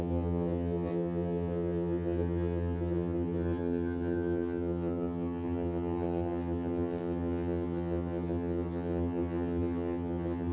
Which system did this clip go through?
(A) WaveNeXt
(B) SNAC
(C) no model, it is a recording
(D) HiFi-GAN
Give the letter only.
D